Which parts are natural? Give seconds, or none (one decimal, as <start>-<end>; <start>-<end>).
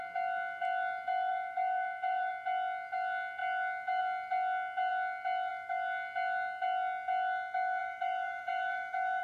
0.0-1.3; 2.3-7.8